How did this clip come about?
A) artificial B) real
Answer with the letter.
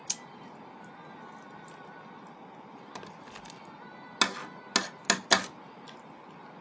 B